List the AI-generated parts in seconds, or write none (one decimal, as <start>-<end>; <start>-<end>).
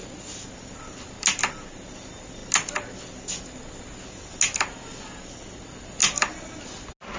none